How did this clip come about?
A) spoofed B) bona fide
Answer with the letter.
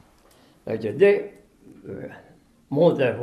B